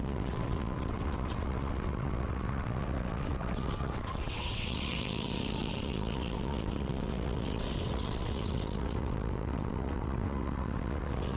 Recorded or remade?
remade